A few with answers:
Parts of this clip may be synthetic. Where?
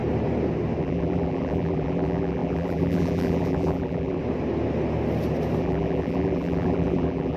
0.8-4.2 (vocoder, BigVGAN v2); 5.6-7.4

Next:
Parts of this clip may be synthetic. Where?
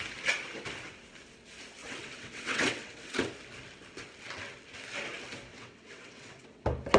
1.8-3.2 (vocoder, WaveNeXt); 5.5-6.6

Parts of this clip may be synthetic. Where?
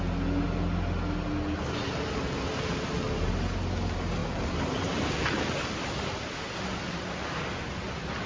4.2-5.5 (vocoder, BigVGAN v2)